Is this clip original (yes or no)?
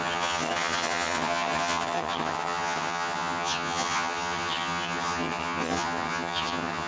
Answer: no